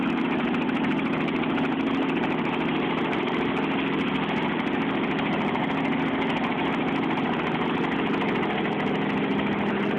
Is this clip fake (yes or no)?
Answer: no